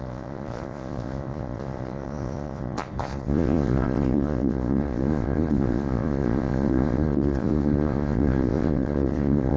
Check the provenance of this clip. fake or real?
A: fake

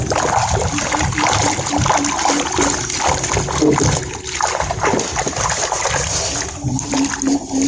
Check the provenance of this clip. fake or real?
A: real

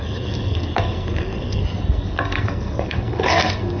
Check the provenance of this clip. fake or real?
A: fake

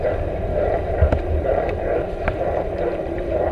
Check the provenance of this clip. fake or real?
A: fake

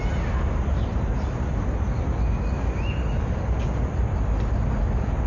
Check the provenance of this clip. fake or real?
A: real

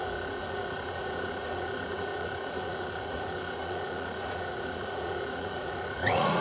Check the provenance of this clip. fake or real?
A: fake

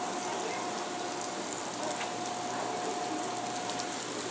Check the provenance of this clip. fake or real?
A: real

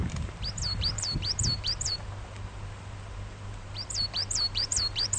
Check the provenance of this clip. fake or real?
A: fake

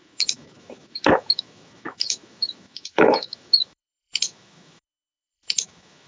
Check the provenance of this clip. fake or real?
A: fake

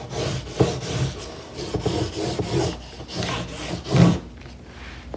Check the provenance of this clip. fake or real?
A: real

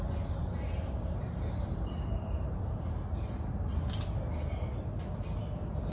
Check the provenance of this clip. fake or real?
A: real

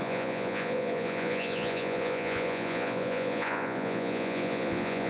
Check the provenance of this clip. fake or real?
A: fake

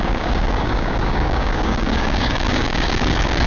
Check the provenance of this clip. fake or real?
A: fake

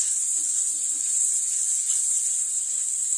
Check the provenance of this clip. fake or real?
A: real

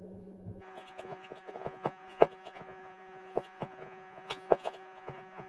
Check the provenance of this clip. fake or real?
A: fake